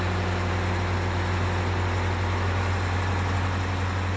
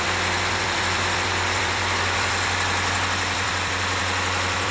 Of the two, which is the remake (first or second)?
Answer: second